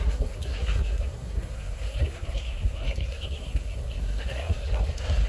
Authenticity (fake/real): fake